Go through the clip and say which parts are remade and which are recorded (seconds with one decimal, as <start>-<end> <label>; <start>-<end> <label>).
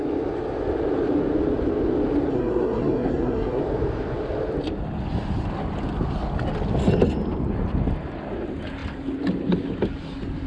0.0-2.3 recorded; 2.3-3.6 remade; 3.6-10.5 recorded